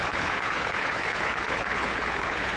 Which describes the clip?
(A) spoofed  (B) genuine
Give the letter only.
A